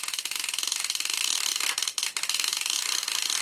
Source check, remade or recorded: recorded